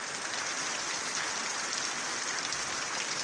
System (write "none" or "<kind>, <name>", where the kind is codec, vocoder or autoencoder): none